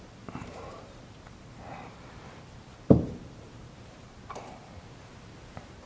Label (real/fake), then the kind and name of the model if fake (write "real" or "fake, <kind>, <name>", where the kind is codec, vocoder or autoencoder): fake, vocoder, BigVGAN v2